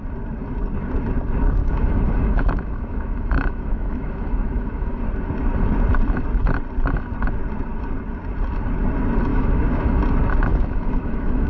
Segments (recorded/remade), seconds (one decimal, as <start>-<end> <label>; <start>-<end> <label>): 0.0-1.6 recorded; 1.6-5.0 remade; 5.0-9.3 recorded; 9.3-10.0 remade; 10.0-10.5 recorded; 10.5-11.5 remade